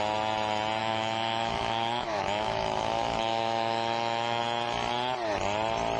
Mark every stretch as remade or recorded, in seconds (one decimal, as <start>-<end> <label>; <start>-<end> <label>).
0.0-0.8 recorded; 0.8-4.4 remade; 4.4-6.0 recorded